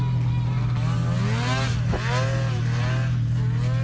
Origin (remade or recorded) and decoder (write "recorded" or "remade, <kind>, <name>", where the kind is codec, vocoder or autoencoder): recorded